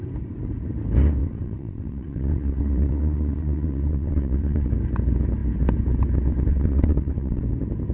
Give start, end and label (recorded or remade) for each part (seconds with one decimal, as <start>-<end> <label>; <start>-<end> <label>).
0.0-1.2 recorded; 1.2-4.7 remade; 4.7-6.5 recorded; 6.5-7.4 remade; 7.4-7.9 recorded